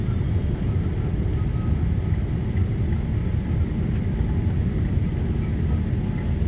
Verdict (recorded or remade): recorded